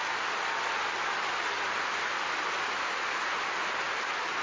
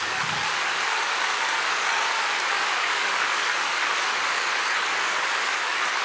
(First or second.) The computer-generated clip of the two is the second